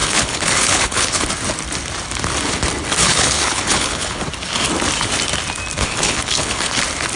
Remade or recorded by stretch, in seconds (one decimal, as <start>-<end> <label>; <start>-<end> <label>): 0.0-1.3 remade; 1.3-3.0 recorded; 3.0-4.2 remade; 4.2-5.8 recorded; 5.8-6.8 remade; 6.8-7.2 recorded